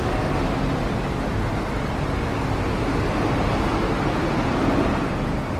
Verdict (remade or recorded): recorded